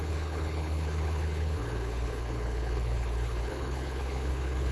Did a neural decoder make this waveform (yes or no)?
yes